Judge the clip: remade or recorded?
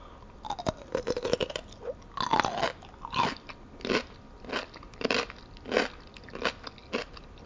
recorded